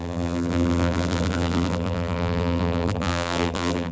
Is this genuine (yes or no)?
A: no